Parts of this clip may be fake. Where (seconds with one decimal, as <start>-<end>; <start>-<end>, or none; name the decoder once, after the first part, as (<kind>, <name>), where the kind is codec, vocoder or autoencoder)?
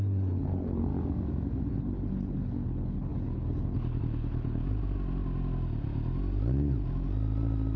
0.0-0.9 (codec, HILCodec); 1.7-4.6